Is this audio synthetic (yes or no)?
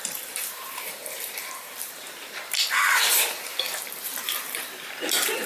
yes